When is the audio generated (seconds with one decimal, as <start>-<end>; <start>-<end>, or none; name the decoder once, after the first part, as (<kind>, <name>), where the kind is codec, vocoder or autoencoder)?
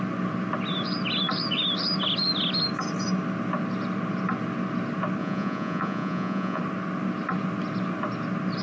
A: 5.2-6.6 (vocoder, Vocos)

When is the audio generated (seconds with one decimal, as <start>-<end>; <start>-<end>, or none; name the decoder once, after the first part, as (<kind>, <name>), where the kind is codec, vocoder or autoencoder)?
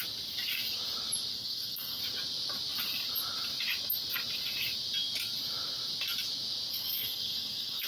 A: 1.3-2.0 (codec, SNAC); 6.7-7.9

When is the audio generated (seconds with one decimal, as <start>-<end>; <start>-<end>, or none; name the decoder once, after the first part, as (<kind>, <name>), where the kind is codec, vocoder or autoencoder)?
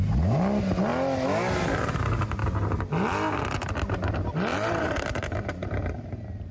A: 4.5-5.7 (vocoder, BigVGAN v2)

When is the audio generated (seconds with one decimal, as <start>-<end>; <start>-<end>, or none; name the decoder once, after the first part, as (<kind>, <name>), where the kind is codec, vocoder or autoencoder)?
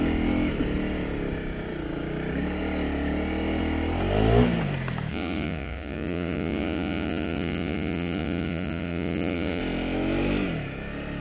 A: 5.1-9.6 (vocoder, Vocos)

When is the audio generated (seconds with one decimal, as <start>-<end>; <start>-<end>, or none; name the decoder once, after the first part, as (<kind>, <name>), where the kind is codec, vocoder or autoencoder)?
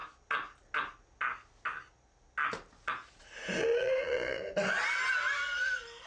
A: 3.7-4.4 (vocoder, Vocos)